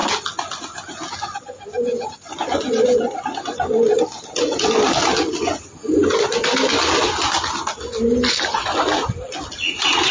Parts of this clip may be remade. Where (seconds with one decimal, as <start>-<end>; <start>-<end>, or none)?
none